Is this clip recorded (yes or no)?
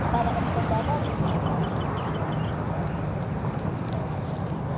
yes